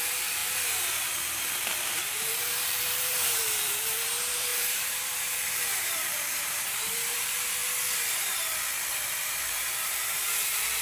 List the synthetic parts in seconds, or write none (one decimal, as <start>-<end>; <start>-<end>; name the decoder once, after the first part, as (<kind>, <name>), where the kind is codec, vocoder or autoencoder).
0.0-7.6 (vocoder, BigVGAN v2); 8.9-10.8